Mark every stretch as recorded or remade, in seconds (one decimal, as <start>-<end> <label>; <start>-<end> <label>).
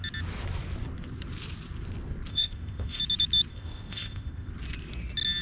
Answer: 0.0-2.3 recorded; 2.3-3.0 remade; 3.0-3.5 recorded; 3.5-4.5 remade; 4.5-5.4 recorded